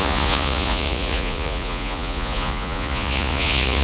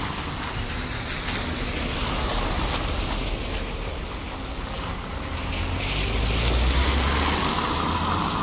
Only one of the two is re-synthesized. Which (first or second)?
first